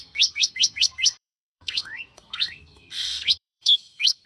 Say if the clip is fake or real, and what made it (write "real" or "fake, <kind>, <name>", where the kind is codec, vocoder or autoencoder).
fake, codec, SNAC